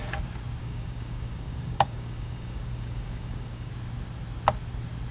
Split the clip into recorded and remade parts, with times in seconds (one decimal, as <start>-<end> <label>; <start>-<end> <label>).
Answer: 0.0-0.6 recorded; 0.6-3.7 remade; 3.7-5.1 recorded